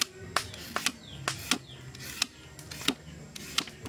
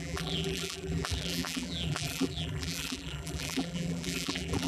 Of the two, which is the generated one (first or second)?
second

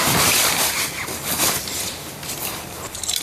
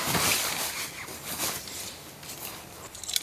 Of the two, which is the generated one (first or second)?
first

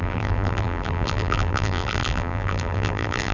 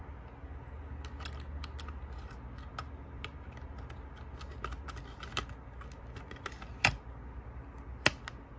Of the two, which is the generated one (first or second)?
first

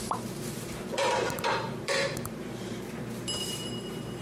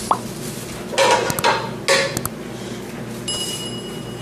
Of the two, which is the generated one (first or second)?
first